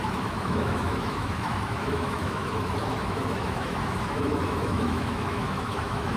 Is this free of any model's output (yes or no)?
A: no